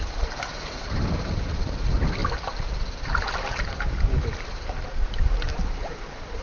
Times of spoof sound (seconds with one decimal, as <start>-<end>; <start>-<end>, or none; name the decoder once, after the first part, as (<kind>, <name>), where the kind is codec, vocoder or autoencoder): 0.0-2.2 (vocoder, BigVGAN v2); 4.5-6.4